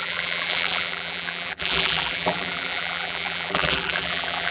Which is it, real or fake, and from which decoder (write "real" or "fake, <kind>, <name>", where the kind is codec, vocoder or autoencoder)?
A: fake, vocoder, BigVGAN v2